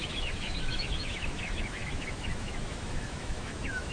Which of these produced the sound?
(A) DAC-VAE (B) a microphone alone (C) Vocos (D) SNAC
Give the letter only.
A